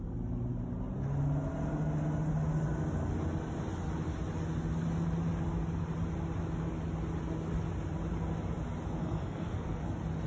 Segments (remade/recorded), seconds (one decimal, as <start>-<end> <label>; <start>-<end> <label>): 0.0-9.0 recorded; 9.0-9.8 remade; 9.8-10.3 recorded